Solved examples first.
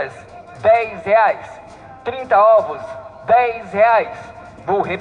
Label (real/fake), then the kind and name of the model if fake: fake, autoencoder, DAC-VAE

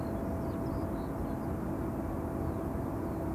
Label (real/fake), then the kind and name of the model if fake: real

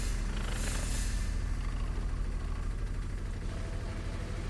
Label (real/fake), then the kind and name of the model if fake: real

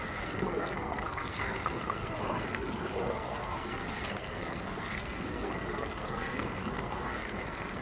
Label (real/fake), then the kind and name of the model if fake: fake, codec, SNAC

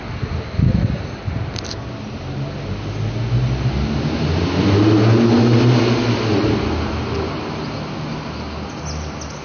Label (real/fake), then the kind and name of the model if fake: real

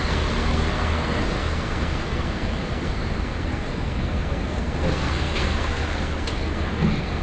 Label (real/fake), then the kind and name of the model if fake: fake, codec, SNAC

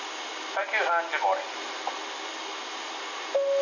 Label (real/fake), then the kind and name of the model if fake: real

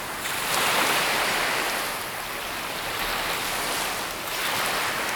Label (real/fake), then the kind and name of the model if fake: real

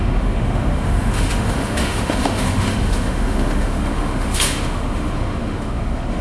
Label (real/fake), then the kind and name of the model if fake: fake, autoencoder, DAC-VAE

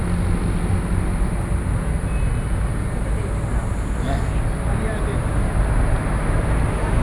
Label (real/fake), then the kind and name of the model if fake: real